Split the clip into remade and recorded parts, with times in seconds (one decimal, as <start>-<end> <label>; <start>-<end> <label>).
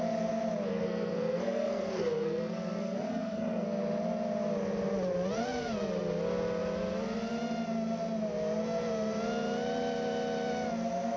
0.0-0.7 recorded; 0.7-3.8 remade; 3.8-11.2 recorded